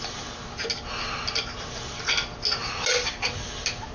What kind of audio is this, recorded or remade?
recorded